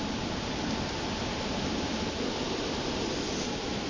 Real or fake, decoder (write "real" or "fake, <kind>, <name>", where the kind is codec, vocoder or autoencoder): fake, vocoder, BigVGAN v2